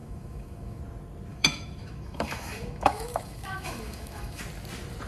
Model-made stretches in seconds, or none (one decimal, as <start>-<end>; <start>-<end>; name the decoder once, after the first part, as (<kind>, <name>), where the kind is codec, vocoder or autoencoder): 0.0-0.8 (autoencoder, DAC-VAE); 1.3-4.4